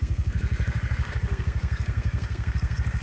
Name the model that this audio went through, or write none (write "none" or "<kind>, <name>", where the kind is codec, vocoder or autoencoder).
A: codec, SNAC